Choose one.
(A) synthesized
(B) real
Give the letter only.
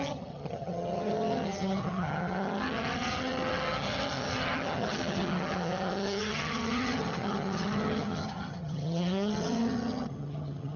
A